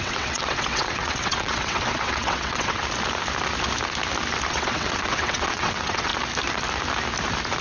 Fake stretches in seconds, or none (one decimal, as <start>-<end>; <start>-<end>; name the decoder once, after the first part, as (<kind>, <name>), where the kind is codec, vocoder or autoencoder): 0.0-2.8 (vocoder, WaveNeXt); 4.5-6.1